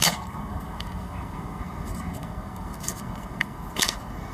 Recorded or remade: remade